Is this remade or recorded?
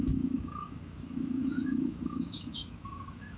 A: remade